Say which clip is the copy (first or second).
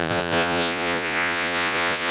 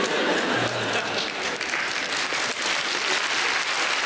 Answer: first